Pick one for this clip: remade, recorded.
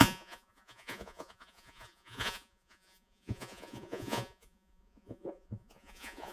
remade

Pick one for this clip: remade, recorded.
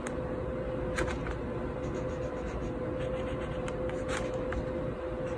recorded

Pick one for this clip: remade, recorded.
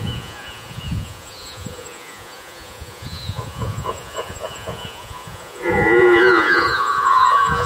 remade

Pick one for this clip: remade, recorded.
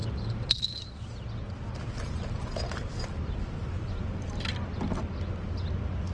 recorded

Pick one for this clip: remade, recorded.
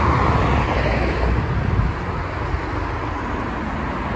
recorded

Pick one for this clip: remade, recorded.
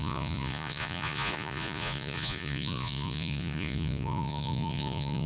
remade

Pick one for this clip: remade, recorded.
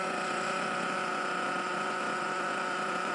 remade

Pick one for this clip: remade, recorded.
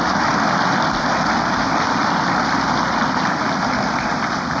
recorded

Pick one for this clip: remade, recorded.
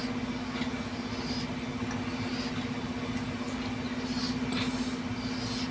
recorded